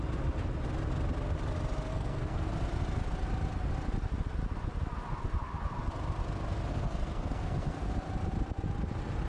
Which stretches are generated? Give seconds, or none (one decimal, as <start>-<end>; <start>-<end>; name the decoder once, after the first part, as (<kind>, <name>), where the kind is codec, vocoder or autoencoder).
1.9-2.5 (codec, SNAC); 6.7-7.9